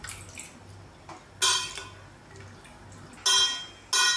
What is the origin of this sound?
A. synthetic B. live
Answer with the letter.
B